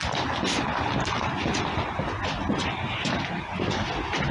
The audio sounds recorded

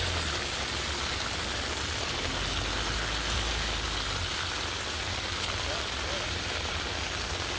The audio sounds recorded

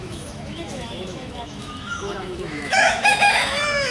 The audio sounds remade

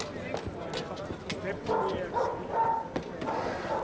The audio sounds recorded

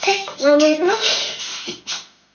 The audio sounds remade